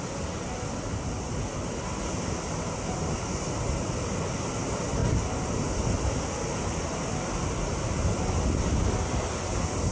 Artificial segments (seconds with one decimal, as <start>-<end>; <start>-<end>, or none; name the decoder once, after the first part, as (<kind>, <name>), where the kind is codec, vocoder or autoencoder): none